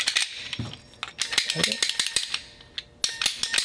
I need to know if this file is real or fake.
real